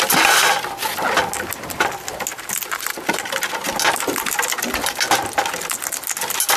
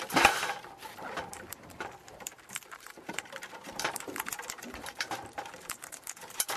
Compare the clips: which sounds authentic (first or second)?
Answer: first